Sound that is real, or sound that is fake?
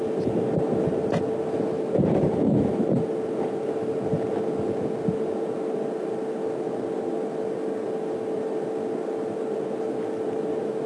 real